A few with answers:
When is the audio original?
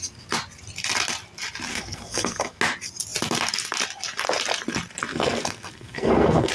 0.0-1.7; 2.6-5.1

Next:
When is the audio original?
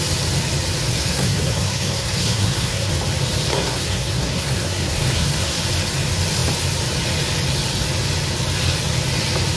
0.0-0.9; 2.9-3.5; 5.6-9.6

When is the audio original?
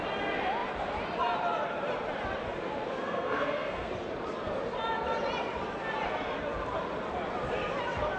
0.0-3.0; 3.9-8.2